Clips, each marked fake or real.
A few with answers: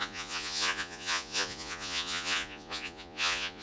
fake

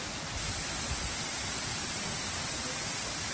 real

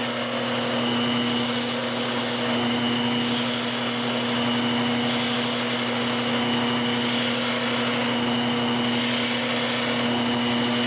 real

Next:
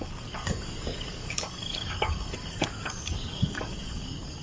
fake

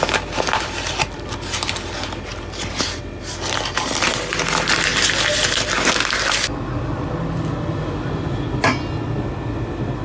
real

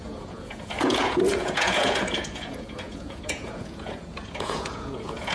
fake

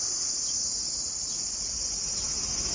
real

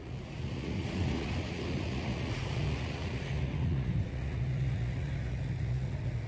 fake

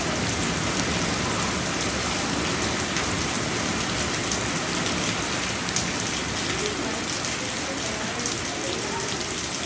real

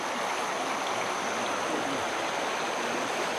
real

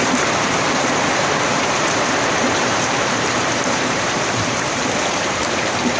fake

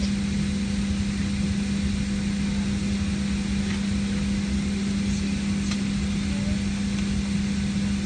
real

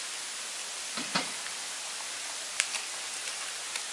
real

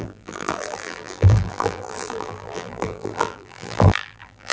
fake